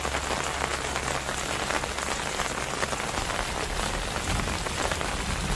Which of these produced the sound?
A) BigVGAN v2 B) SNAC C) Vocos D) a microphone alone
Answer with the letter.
D